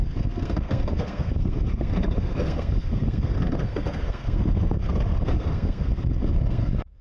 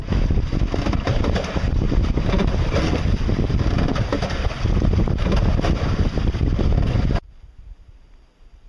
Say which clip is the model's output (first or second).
first